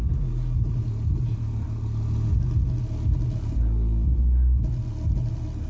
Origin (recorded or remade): recorded